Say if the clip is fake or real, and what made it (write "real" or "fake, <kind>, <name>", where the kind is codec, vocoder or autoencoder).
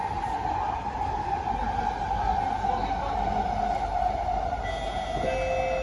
real